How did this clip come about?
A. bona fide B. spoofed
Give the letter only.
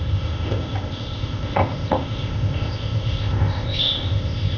B